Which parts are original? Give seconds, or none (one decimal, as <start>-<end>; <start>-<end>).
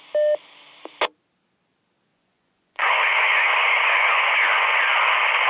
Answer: 0.0-2.1; 4.8-5.5